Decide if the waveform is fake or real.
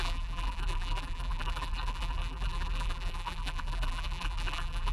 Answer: fake